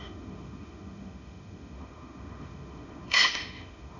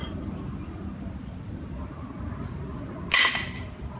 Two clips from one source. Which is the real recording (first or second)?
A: second